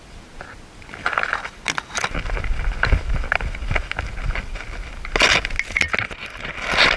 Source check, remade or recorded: recorded